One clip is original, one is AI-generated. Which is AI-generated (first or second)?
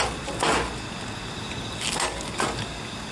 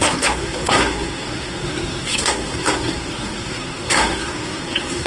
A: second